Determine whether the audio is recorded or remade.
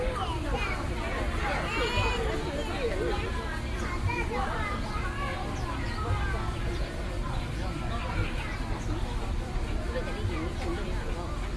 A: recorded